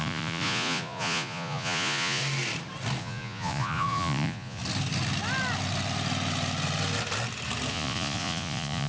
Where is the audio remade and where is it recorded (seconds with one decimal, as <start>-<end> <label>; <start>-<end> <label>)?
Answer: 0.0-2.2 remade; 2.2-3.0 recorded; 3.0-4.6 remade; 4.6-7.7 recorded; 7.7-8.9 remade